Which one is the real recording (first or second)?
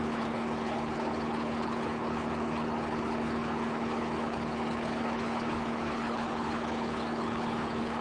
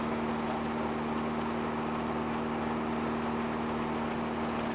second